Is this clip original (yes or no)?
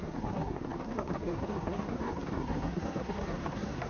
no